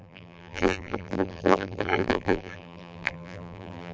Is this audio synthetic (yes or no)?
yes